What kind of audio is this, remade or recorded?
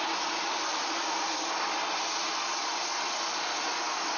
recorded